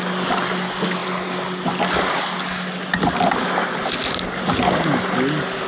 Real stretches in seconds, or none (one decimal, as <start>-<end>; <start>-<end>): 0.0-5.7